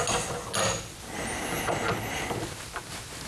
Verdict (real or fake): real